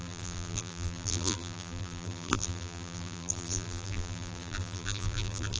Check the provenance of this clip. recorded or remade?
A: remade